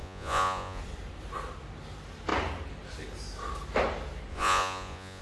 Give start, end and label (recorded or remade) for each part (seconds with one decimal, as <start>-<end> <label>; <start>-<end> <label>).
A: 0.0-0.8 remade; 0.8-4.3 recorded; 4.3-5.2 remade